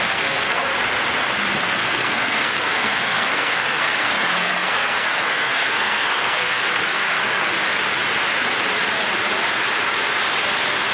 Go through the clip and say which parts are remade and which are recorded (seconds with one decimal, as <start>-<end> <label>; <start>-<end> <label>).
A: 0.0-0.7 remade; 0.7-1.6 recorded; 1.6-7.5 remade; 7.5-10.9 recorded